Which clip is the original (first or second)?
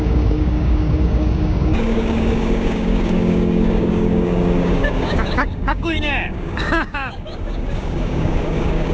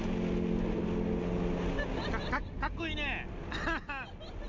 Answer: second